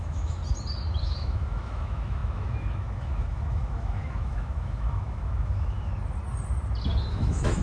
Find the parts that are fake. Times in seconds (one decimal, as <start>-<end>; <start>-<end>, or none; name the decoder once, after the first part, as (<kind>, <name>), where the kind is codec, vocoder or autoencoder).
0.0-0.4 (autoencoder, DAC-VAE); 1.0-5.9; 7.1-7.6